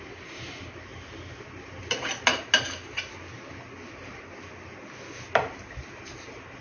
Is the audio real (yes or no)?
yes